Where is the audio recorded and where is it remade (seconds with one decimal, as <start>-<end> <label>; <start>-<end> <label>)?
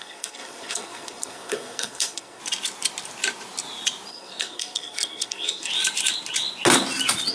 0.0-2.4 remade; 2.4-4.1 recorded; 4.1-5.7 remade; 5.7-7.3 recorded